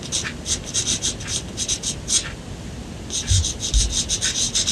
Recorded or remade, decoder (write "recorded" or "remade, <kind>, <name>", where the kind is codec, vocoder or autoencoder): recorded